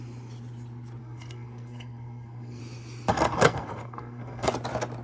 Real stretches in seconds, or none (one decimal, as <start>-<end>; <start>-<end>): 0.0-1.0; 2.6-3.1; 4.5-5.0